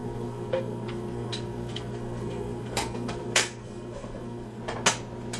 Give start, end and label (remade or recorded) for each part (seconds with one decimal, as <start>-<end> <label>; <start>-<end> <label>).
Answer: 0.0-4.6 remade; 4.6-5.4 recorded